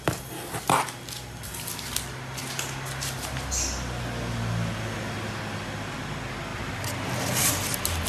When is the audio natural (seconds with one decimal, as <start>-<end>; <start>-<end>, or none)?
0.0-8.1